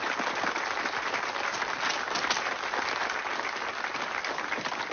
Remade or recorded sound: recorded